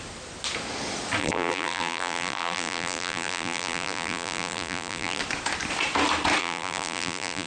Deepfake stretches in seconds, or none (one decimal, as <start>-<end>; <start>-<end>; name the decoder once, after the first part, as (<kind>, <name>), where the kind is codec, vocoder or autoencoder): 1.2-5.2 (vocoder, BigVGAN v2); 6.4-7.5